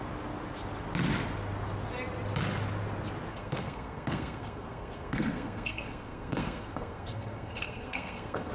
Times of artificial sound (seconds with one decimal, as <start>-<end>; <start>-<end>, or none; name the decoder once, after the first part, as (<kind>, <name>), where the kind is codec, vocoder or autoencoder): 3.3-8.5 (codec, SNAC)